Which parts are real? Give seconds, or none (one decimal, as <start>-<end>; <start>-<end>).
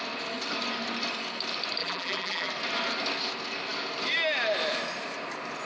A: 0.0-1.8; 2.5-5.7